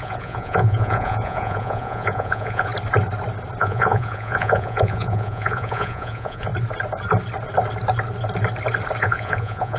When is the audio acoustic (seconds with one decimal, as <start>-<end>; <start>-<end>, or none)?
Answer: 2.7-3.6; 6.5-9.0

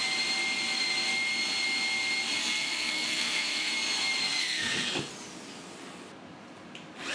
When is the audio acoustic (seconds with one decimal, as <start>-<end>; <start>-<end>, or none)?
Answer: 0.0-2.4; 3.7-4.4; 5.1-7.1

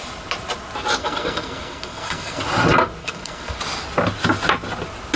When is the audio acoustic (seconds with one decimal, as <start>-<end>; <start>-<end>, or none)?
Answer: 0.0-1.0; 2.4-3.0; 3.6-5.2

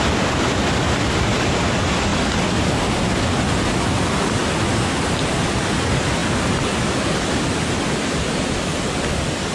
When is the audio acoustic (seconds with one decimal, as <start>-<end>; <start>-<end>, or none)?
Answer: 0.0-9.5

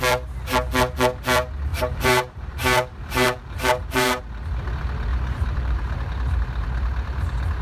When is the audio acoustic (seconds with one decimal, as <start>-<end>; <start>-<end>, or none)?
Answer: 0.0-1.7; 4.2-5.1; 6.1-7.6